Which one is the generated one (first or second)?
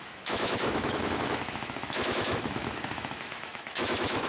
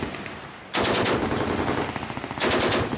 first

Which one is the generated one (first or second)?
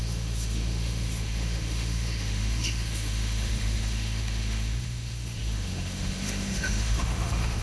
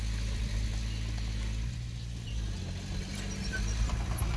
first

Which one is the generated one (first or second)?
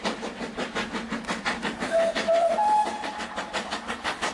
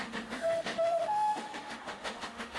second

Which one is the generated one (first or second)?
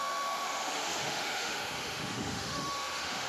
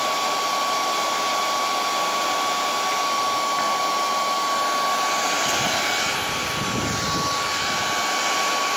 first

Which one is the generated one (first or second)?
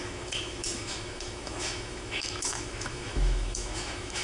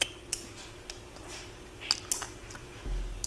first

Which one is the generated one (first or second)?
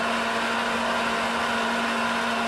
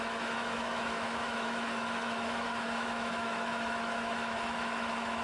second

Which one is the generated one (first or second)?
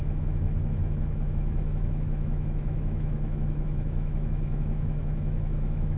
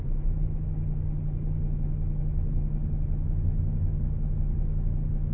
first